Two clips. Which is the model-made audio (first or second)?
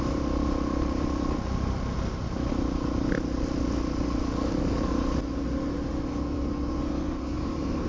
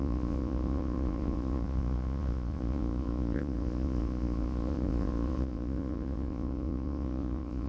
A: second